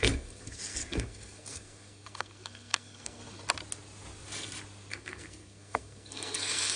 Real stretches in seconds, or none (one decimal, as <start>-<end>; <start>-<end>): 3.2-4.9